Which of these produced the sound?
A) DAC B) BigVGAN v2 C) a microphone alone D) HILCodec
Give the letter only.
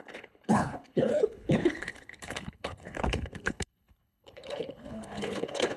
D